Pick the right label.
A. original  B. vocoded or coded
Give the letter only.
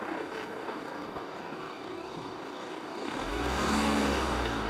B